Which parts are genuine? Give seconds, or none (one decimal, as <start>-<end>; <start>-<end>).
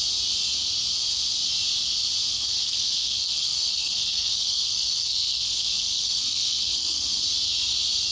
0.0-2.3; 7.2-8.1